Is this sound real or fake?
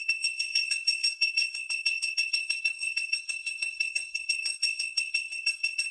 fake